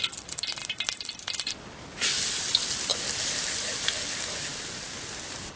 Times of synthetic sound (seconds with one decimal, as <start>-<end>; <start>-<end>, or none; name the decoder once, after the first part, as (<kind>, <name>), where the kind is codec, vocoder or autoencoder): none